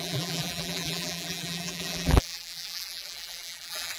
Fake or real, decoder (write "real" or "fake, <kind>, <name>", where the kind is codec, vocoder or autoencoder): fake, vocoder, BigVGAN v2